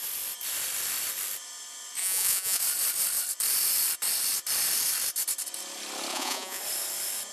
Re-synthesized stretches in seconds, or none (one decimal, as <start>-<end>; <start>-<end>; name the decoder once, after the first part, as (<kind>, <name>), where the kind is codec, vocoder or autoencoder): 2.0-2.6 (vocoder, Vocos); 6.1-6.6